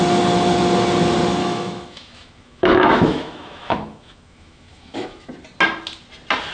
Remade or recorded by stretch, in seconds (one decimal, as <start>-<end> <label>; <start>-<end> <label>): 0.0-1.4 recorded; 1.4-5.3 remade; 5.3-6.5 recorded